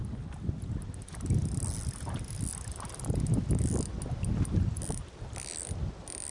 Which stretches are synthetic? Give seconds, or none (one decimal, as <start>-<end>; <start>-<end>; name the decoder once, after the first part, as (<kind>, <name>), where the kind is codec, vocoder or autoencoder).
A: none